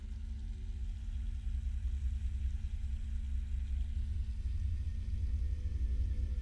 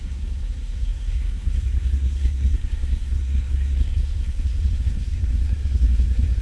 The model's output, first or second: second